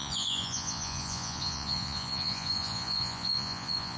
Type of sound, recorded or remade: remade